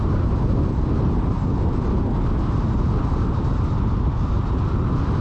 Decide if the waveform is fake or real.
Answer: real